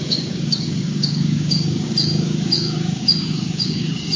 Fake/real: fake